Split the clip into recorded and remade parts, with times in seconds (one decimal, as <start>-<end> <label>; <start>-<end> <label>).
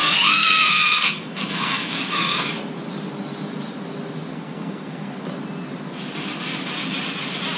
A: 0.0-2.5 remade; 2.5-4.3 recorded; 4.3-5.2 remade; 5.2-7.6 recorded